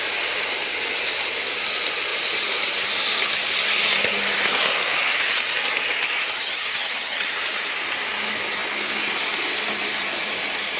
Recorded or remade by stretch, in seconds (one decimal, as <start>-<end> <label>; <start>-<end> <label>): 0.0-6.4 recorded; 6.4-7.3 remade; 7.3-10.8 recorded